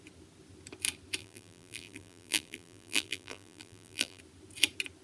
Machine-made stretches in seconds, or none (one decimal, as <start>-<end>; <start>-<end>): 1.2-4.2